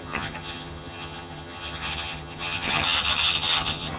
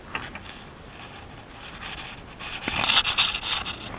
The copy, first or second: first